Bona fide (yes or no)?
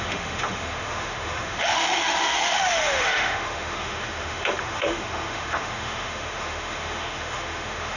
no